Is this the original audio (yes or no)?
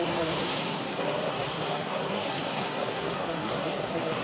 no